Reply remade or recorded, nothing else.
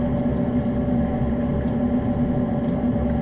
recorded